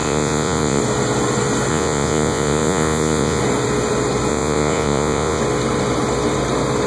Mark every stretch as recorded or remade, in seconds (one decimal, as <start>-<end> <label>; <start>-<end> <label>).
0.0-0.8 remade; 0.8-1.7 recorded; 1.7-3.4 remade; 3.4-4.3 recorded; 4.3-5.4 remade; 5.4-6.9 recorded